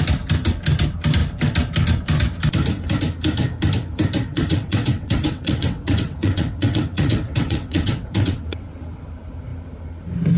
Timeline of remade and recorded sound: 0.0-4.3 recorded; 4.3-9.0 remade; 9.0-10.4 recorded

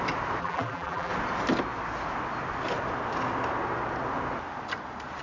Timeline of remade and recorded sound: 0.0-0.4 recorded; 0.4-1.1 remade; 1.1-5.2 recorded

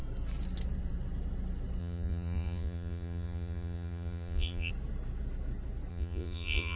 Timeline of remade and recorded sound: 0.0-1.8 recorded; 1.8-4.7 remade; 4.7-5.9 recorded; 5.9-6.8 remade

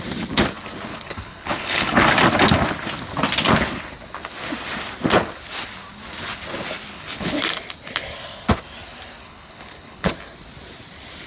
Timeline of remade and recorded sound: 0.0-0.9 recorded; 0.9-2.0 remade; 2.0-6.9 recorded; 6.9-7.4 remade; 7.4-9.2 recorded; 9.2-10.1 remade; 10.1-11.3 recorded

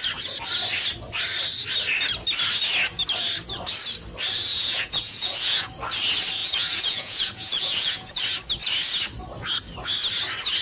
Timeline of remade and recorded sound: 0.0-4.5 recorded; 4.5-5.7 remade; 5.7-6.4 recorded; 6.4-8.2 remade; 8.2-10.6 recorded

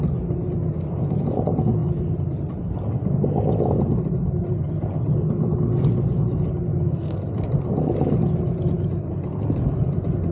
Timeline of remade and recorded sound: 0.0-10.3 recorded

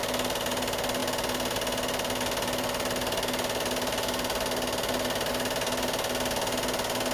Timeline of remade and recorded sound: 0.0-7.1 recorded

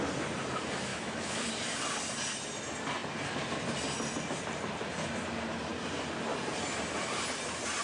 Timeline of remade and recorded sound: 0.0-0.9 recorded; 0.9-1.5 remade; 1.5-7.8 recorded